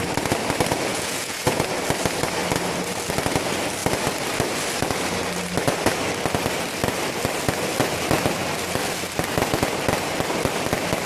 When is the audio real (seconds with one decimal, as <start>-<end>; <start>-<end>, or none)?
0.0-0.9; 1.7-11.1

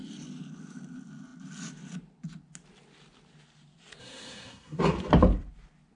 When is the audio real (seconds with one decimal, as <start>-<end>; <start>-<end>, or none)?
0.0-4.0; 4.8-6.0